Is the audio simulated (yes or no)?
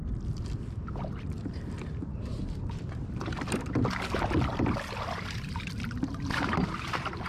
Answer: yes